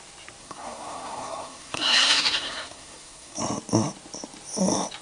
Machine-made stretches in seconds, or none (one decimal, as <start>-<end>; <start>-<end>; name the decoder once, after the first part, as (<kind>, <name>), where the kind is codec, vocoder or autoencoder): 0.4-3.4 (codec, SNAC)